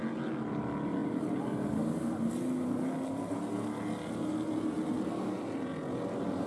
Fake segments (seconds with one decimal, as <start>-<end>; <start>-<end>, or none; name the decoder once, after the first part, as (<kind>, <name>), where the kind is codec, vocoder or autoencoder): none